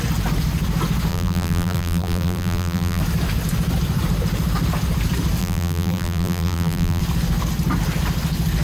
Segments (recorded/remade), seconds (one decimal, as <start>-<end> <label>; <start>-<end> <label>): 0.0-1.1 recorded; 1.1-3.0 remade; 3.0-5.4 recorded; 5.4-7.0 remade; 7.0-8.6 recorded